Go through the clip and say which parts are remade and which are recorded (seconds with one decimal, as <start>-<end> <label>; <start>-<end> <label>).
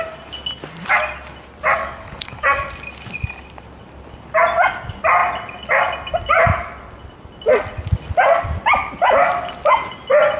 0.0-1.8 recorded; 1.8-2.7 remade; 2.7-10.4 recorded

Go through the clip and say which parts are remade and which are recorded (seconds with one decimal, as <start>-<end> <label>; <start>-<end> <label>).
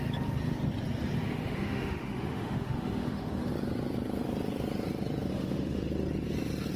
0.0-1.2 recorded; 1.2-3.5 remade; 3.5-5.3 recorded; 5.3-5.9 remade; 5.9-6.8 recorded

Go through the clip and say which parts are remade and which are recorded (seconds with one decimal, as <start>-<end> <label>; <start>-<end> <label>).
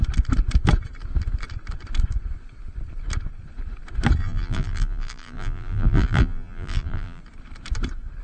0.0-4.2 recorded; 4.2-7.2 remade; 7.2-8.2 recorded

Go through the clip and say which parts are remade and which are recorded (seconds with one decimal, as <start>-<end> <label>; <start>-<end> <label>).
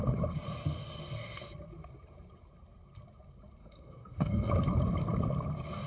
0.0-3.6 recorded; 3.6-4.5 remade; 4.5-5.9 recorded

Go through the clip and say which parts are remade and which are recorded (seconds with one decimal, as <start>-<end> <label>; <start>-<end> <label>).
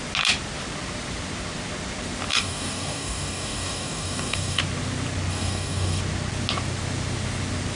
0.0-2.3 recorded; 2.3-4.6 remade; 4.6-5.3 recorded; 5.3-6.0 remade; 6.0-7.7 recorded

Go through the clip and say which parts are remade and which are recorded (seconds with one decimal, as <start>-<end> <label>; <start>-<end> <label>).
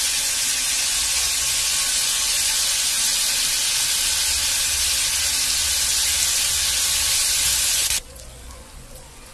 0.0-3.1 remade; 3.1-7.3 recorded; 7.3-9.3 remade